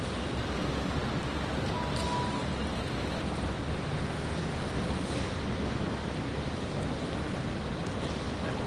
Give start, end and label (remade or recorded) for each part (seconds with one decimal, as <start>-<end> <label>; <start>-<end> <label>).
0.0-8.7 recorded